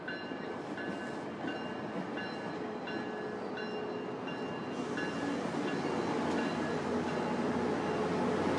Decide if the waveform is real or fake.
real